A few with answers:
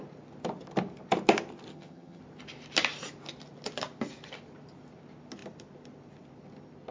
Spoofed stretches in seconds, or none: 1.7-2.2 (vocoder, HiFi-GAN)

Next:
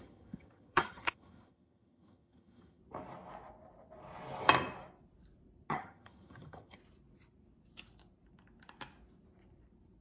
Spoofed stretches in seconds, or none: 0.0-2.8 (vocoder, HiFi-GAN); 5.7-6.8

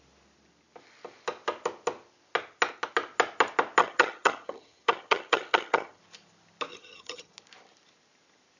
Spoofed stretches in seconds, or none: 3.8-6.0 (vocoder, HiFi-GAN); 6.7-7.3